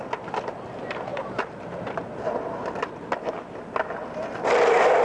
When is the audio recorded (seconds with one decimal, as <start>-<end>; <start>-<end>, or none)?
0.0-5.0